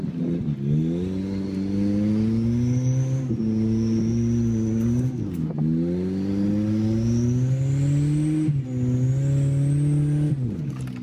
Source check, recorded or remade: recorded